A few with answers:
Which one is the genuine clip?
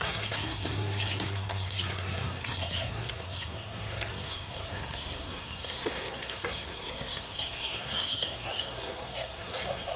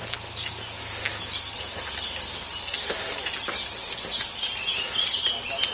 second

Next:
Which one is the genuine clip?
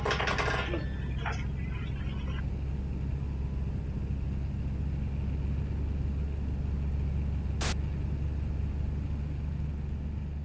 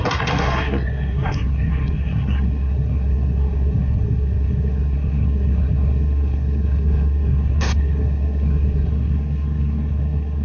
first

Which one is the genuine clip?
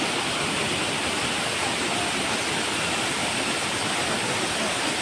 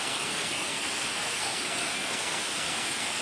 first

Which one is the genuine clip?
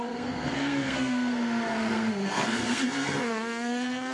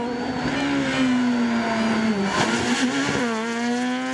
second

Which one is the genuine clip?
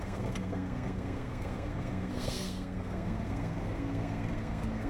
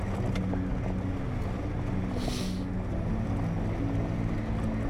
second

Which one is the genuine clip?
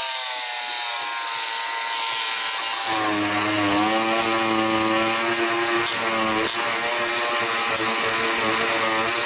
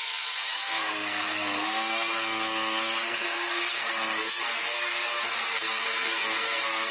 first